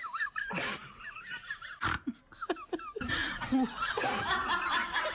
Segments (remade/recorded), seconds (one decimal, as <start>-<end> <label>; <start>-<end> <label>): 0.0-3.2 recorded; 3.2-4.0 remade; 4.0-5.1 recorded